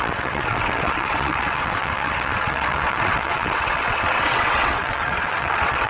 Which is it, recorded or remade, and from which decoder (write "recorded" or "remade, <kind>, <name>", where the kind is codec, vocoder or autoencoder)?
remade, vocoder, WaveNeXt